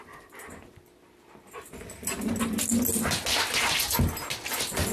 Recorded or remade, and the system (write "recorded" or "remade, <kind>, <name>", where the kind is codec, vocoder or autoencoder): recorded